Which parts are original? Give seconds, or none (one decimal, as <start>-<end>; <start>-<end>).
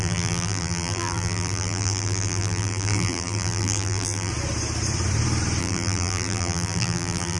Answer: 4.3-5.6